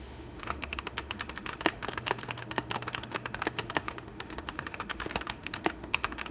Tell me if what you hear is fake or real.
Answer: fake